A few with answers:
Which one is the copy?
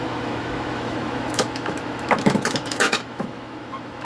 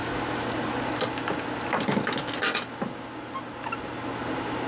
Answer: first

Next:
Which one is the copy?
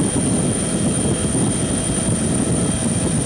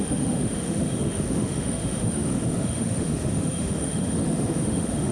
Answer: second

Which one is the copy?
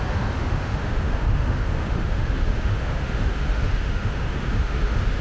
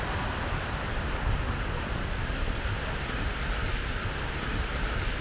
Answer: first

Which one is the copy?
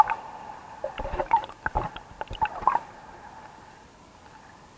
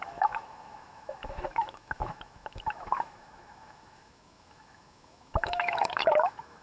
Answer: second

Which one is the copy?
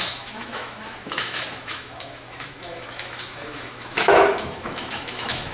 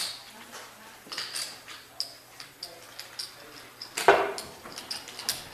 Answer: first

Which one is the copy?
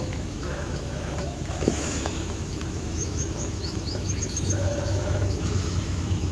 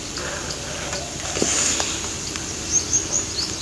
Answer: first